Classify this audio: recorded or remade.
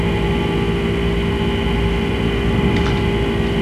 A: recorded